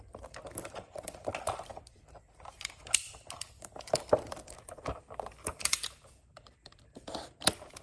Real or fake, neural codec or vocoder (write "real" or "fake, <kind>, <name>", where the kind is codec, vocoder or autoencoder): fake, vocoder, BigVGAN v2